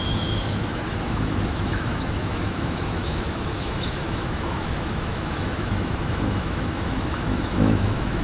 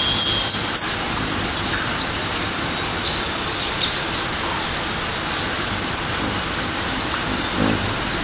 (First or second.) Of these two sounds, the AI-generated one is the first